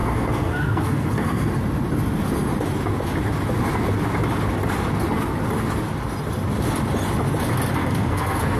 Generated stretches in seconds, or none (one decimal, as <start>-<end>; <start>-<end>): 0.0-1.5; 7.8-8.6